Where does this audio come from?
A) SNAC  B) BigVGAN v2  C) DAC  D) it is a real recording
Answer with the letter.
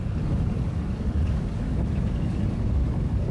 C